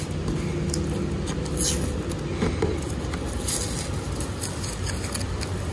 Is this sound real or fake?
real